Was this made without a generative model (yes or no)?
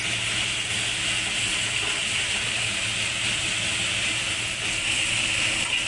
yes